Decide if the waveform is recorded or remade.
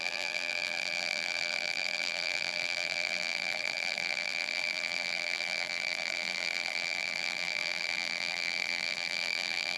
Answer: remade